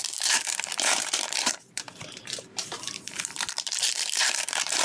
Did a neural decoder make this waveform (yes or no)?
yes